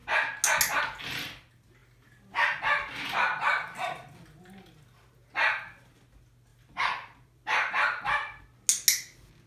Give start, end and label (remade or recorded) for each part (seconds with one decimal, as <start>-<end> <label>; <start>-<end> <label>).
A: 0.0-6.5 recorded; 6.5-8.4 remade; 8.4-9.5 recorded